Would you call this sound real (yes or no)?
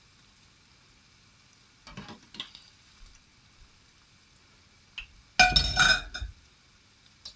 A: yes